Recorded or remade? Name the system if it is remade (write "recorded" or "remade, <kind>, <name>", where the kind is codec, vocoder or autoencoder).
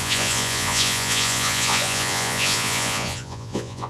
remade, vocoder, Vocos